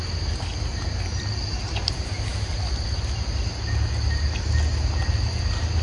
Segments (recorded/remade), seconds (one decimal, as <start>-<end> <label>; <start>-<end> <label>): 0.0-5.8 recorded